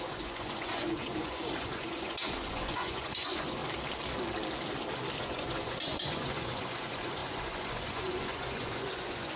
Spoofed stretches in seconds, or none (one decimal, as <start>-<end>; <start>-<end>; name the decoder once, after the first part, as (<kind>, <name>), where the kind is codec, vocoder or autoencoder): 0.0-3.6 (vocoder, Vocos); 5.2-9.4